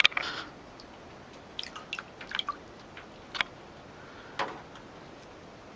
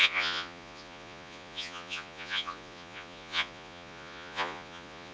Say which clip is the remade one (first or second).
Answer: second